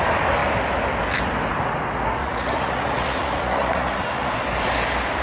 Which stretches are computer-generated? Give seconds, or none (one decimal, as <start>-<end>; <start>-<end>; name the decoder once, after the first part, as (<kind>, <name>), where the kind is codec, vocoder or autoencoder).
2.2-4.3 (vocoder, Vocos)